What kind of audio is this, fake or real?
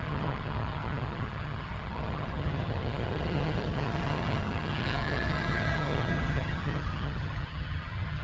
fake